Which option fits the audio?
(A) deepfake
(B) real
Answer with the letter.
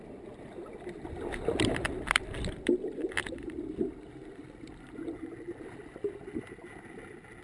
B